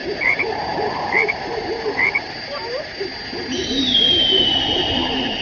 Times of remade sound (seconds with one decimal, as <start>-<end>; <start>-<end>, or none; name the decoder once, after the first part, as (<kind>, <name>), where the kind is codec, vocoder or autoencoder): 0.0-3.1 (vocoder, BigVGAN v2); 3.8-5.4